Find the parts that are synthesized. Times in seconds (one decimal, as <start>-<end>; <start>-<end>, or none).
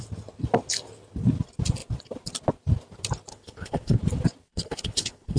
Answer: 3.3-4.0; 4.5-5.4